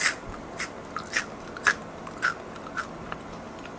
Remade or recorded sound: recorded